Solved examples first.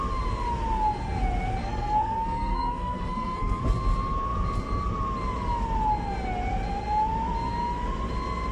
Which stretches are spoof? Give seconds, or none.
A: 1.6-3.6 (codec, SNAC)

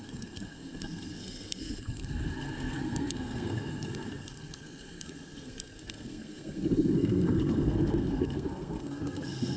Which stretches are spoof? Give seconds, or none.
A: 0.0-9.6 (codec, SNAC)